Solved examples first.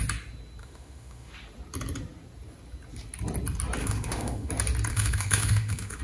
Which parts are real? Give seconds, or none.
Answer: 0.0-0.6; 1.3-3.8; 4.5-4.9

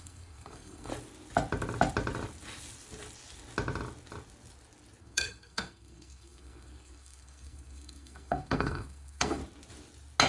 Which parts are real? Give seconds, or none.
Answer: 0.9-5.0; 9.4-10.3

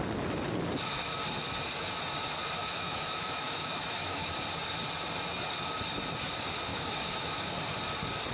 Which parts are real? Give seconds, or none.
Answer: 0.0-2.6; 4.3-6.7; 7.5-8.3